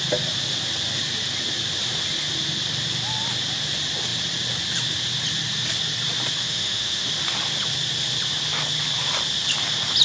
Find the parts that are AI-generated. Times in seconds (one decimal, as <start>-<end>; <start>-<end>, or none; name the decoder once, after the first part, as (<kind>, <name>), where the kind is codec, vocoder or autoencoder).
6.4-7.1 (autoencoder, DAC-VAE)